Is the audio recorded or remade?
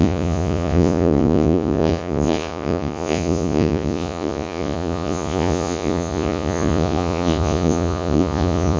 remade